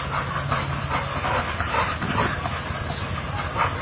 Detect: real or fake real